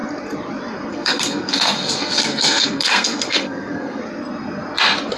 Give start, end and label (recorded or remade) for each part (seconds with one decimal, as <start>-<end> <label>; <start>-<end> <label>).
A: 0.0-0.9 recorded; 0.9-4.0 remade; 4.0-5.2 recorded